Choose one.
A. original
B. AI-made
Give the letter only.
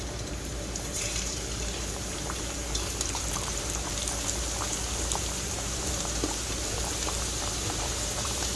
B